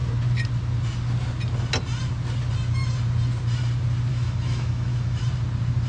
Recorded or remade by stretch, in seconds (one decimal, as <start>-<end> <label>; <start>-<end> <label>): 0.0-4.1 recorded; 4.1-5.2 remade; 5.2-5.9 recorded